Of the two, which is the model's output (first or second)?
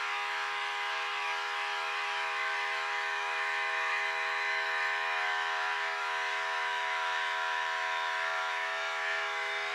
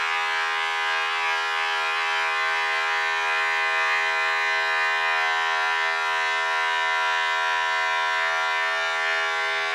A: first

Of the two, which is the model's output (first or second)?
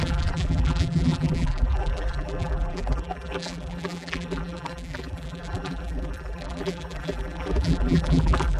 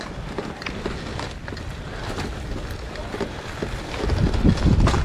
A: first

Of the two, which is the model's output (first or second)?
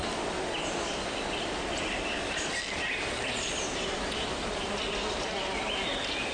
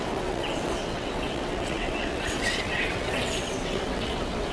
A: second